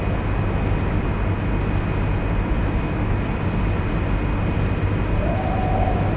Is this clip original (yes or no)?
yes